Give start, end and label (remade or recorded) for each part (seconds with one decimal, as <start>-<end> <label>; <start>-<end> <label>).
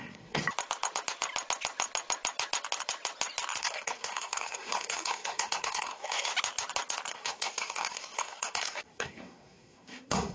0.0-0.4 remade; 0.4-3.6 recorded; 3.6-6.3 remade; 6.3-7.1 recorded; 7.1-10.3 remade